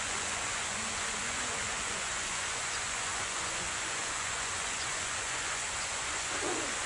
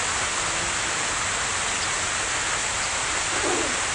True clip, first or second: second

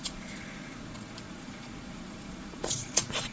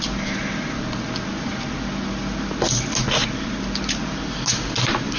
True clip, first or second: second